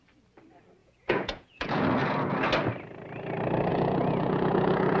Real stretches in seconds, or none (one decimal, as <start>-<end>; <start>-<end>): 0.0-0.8; 1.8-3.7